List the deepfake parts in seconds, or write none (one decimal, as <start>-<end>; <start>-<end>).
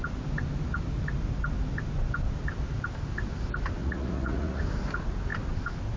3.8-4.6